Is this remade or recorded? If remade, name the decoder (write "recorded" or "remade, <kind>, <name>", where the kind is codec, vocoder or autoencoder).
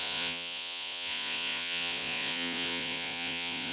remade, vocoder, Vocos